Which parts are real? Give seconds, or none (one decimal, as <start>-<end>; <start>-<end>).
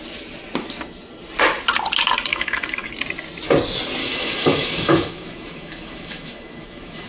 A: 0.0-2.3; 2.9-4.0